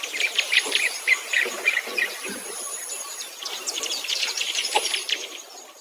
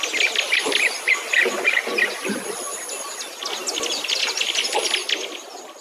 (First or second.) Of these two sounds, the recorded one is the second